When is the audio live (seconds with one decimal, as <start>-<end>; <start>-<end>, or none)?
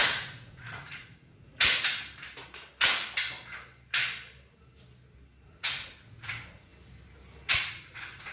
1.9-5.4; 6.7-7.5